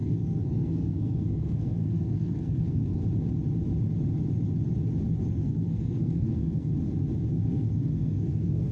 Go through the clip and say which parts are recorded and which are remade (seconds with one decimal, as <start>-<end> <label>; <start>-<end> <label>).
0.0-3.0 remade; 3.0-5.3 recorded; 5.3-6.7 remade; 6.7-7.3 recorded; 7.3-8.7 remade